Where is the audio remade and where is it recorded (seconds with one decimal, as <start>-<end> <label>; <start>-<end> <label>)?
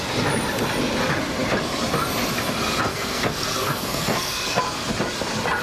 0.0-2.9 recorded; 2.9-4.6 remade; 4.6-5.6 recorded